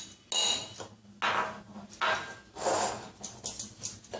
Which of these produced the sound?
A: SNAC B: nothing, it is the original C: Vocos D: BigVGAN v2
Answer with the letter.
B